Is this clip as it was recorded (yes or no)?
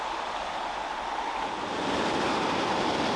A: yes